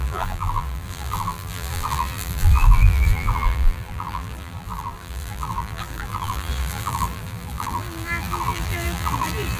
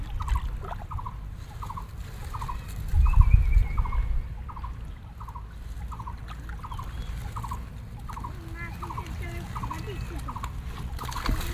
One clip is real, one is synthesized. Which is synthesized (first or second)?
first